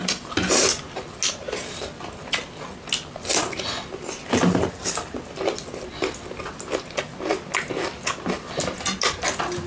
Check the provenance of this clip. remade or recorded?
recorded